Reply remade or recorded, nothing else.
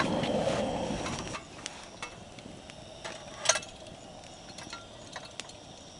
recorded